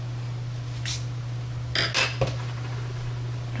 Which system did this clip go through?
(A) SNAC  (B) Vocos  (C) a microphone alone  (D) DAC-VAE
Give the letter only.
C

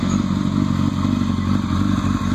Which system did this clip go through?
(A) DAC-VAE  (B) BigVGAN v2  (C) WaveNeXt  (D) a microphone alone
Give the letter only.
D